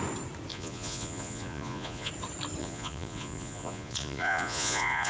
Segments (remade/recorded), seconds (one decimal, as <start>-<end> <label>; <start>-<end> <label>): 0.0-0.5 recorded; 0.5-2.1 remade; 2.1-2.6 recorded; 2.6-5.1 remade